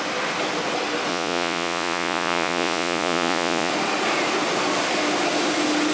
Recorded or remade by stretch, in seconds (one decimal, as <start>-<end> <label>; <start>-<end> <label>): 0.0-1.1 recorded; 1.1-3.7 remade; 3.7-5.9 recorded